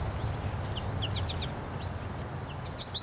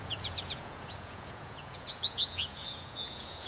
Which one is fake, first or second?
second